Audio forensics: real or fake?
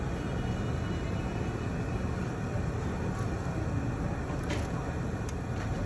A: real